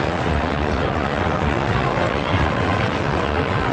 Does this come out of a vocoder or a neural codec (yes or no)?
yes